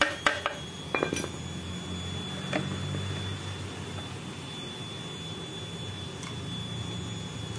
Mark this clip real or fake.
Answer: real